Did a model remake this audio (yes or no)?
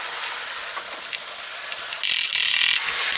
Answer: no